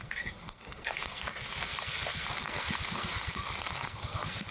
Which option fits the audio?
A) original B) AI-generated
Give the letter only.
B